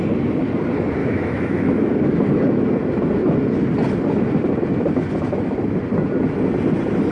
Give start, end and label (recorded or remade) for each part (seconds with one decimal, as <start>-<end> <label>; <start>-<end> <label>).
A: 0.0-1.0 recorded; 1.0-1.9 remade; 1.9-7.1 recorded

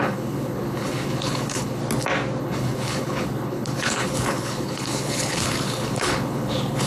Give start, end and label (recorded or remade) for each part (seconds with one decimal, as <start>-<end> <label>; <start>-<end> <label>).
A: 0.0-1.8 remade; 1.8-2.4 recorded; 2.4-6.9 remade

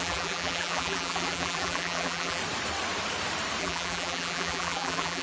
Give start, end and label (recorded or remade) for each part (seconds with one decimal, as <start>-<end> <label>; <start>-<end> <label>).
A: 0.0-2.4 remade; 2.4-3.6 recorded; 3.6-5.2 remade